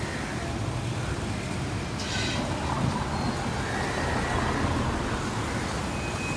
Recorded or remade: recorded